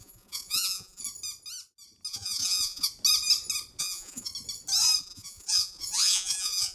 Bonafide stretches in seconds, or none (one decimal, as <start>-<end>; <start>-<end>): 1.0-2.1; 2.9-3.8; 4.3-5.0